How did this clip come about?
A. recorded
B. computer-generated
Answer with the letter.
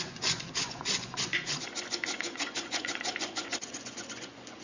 B